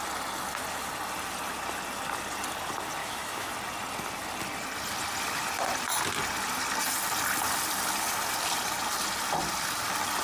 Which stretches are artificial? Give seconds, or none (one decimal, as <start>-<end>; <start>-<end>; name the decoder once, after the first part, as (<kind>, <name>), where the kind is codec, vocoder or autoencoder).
3.0-3.5 (autoencoder, DAC-VAE)